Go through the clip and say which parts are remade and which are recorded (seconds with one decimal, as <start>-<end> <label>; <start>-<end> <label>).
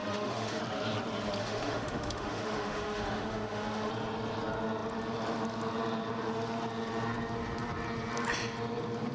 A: 0.0-0.6 remade; 0.6-1.4 recorded; 1.4-3.9 remade; 3.9-9.1 recorded